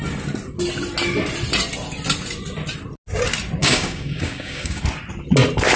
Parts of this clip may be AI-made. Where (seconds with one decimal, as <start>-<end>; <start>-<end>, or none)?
3.6-4.8